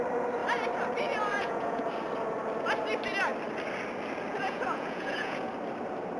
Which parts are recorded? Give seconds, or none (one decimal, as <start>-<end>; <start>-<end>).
0.0-1.3; 1.8-4.4; 5.5-6.2